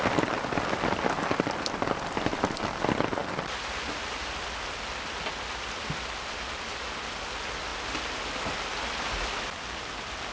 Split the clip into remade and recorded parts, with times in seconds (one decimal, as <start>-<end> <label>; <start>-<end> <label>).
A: 0.0-10.3 recorded